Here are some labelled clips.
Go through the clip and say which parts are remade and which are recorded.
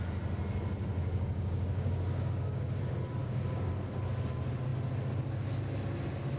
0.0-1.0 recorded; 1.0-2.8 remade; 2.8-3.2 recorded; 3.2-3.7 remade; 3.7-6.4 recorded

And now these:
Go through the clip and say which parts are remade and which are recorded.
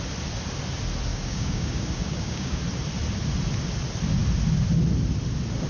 0.0-1.1 recorded; 1.1-2.6 remade; 2.6-5.7 recorded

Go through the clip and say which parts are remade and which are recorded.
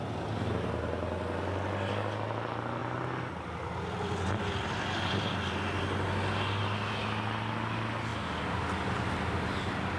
0.0-10.0 recorded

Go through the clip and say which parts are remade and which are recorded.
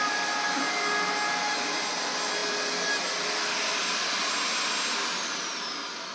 0.0-6.1 recorded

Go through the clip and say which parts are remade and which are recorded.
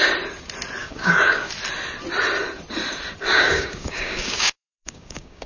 0.0-0.8 recorded; 0.8-1.5 remade; 1.5-3.3 recorded; 3.3-5.5 remade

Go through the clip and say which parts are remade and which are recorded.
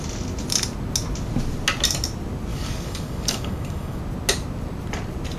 0.0-2.5 recorded; 2.5-4.0 remade; 4.0-5.4 recorded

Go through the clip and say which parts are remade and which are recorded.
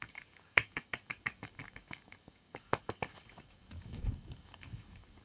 0.0-5.2 remade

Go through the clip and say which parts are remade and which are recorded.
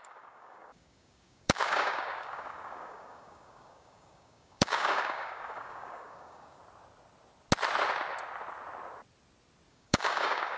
0.0-6.6 remade; 6.6-9.7 recorded; 9.7-10.6 remade